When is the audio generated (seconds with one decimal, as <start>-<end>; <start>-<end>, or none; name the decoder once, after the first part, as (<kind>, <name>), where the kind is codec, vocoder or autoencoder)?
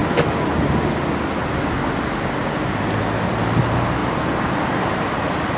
4.0-4.5 (vocoder, BigVGAN v2)